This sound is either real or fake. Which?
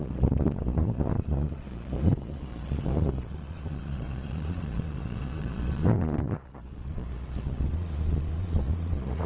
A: fake